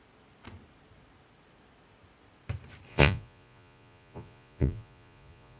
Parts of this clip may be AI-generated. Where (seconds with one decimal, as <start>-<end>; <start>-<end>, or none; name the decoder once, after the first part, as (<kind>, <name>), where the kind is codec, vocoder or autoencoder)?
2.9-5.6 (vocoder, Vocos)